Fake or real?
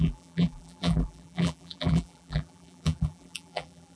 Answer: fake